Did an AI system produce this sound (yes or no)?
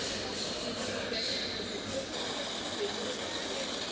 no